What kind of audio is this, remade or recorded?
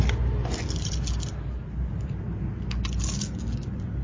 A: recorded